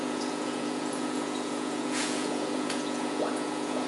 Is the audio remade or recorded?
remade